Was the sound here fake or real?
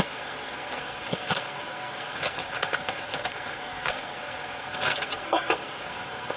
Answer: fake